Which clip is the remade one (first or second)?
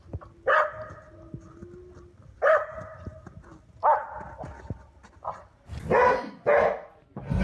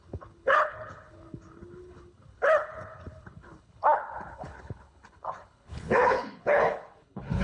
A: second